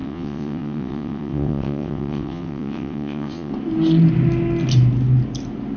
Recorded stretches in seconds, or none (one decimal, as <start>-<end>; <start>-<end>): 3.5-5.8

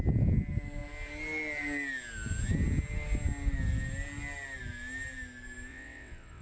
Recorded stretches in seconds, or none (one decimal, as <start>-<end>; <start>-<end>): 0.0-5.7

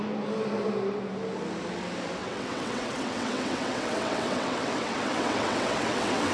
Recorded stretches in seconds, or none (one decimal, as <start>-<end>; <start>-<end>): 0.0-2.2

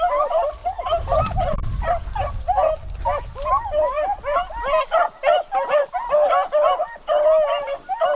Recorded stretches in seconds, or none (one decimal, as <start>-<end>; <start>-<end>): 0.0-8.1

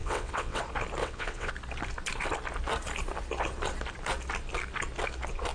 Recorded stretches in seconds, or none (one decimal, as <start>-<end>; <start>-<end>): 0.6-1.0; 1.5-5.5

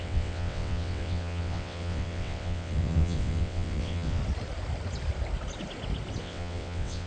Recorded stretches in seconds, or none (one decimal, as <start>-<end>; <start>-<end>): 4.2-6.2

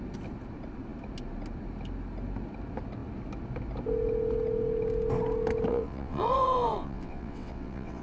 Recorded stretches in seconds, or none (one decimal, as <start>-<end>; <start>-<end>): 0.0-5.7

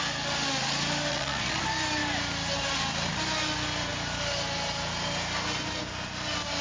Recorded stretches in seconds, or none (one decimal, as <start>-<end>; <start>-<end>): 0.0-1.1; 1.6-6.6